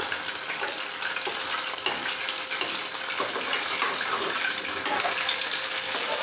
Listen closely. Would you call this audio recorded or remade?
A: recorded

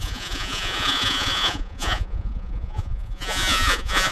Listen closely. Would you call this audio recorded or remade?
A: remade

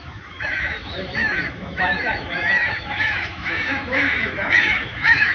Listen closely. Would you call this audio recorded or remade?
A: remade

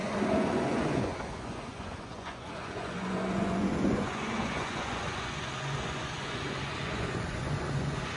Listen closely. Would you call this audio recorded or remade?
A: remade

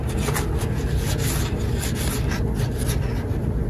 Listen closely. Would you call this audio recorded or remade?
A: recorded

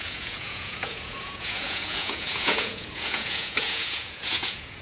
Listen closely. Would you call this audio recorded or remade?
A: remade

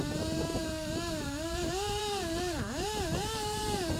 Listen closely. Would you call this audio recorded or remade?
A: remade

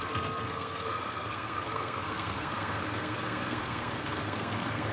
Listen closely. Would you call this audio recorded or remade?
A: remade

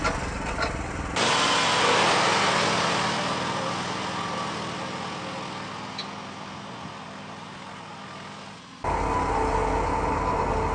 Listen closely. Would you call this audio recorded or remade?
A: recorded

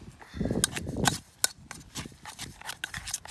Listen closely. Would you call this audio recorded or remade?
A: recorded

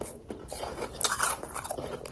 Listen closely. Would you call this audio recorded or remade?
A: remade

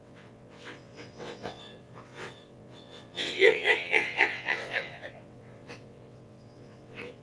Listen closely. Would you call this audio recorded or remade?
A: remade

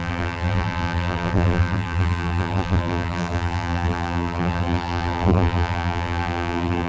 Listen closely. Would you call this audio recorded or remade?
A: remade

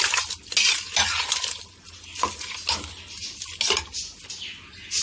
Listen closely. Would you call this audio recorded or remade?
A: recorded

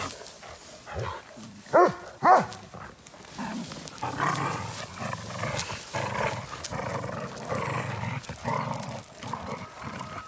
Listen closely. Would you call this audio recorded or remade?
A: recorded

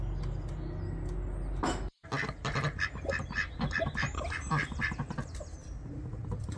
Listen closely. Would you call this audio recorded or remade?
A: recorded